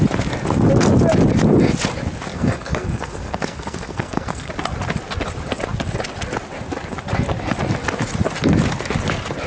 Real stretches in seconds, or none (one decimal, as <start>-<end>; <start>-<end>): 0.0-2.3; 4.5-9.5